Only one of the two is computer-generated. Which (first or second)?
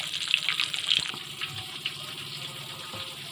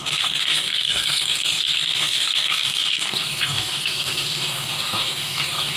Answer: second